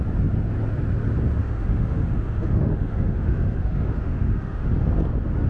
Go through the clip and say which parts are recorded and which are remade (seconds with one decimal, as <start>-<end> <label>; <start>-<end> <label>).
0.0-1.4 recorded; 1.4-4.7 remade; 4.7-5.5 recorded